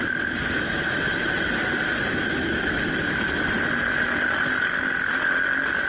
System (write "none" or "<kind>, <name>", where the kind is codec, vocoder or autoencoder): none